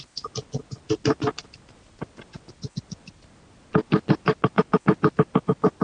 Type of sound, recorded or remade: recorded